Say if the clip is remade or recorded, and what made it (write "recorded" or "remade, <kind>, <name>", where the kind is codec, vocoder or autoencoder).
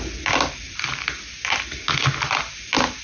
recorded